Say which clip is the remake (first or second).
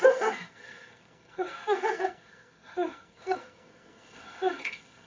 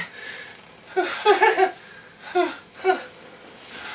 first